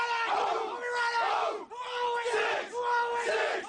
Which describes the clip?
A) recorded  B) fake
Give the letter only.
A